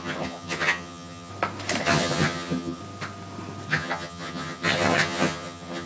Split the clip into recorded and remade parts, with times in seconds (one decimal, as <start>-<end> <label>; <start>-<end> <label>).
0.0-1.3 remade; 1.3-1.8 recorded; 1.8-2.8 remade; 2.8-3.7 recorded; 3.7-5.9 remade